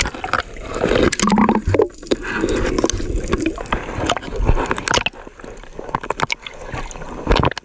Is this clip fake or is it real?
real